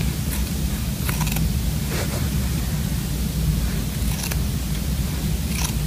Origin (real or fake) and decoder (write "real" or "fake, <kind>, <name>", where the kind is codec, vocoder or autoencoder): real